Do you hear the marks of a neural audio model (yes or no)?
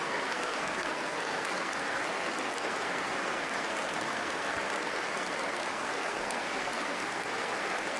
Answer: yes